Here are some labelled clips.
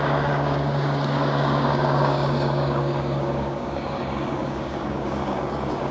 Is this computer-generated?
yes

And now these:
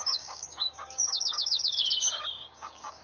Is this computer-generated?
yes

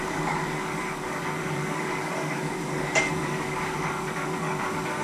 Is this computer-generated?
yes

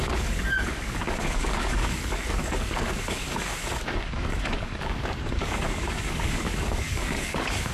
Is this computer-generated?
yes